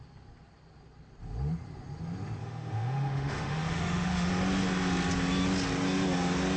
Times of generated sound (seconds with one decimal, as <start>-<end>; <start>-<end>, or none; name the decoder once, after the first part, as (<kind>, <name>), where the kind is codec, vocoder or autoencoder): 2.4-4.3 (autoencoder, DAC-VAE)